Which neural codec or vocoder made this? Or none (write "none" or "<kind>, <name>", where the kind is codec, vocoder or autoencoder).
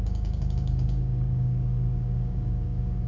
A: codec, DAC